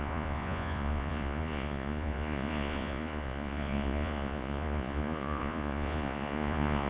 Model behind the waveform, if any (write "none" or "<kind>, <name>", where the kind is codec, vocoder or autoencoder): vocoder, Vocos